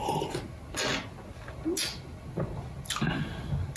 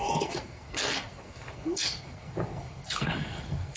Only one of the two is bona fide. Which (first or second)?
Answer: first